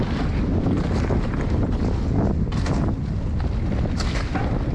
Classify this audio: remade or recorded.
recorded